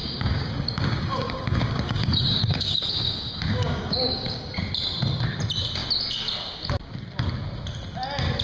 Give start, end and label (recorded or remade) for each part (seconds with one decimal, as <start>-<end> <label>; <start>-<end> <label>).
0.0-4.5 remade; 4.5-8.4 recorded